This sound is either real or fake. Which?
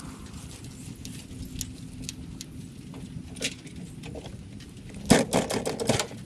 real